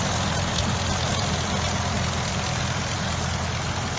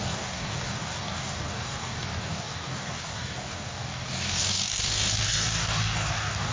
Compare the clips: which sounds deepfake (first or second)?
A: second